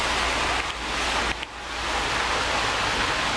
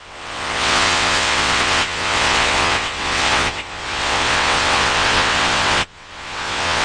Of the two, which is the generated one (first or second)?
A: second